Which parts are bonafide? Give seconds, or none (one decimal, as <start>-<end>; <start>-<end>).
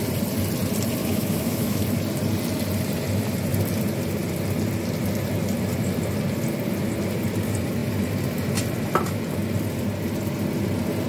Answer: 0.0-1.0; 1.8-11.1